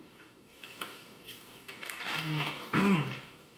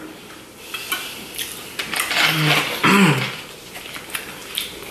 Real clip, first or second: second